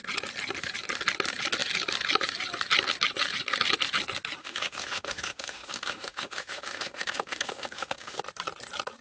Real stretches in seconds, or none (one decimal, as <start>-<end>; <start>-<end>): 0.0-4.4; 8.2-9.0